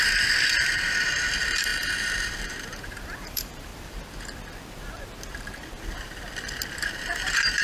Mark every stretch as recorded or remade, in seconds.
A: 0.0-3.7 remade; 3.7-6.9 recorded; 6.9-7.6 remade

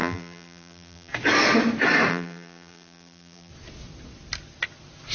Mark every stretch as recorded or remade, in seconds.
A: 0.0-1.1 remade; 1.1-2.1 recorded; 2.1-3.5 remade; 3.5-5.1 recorded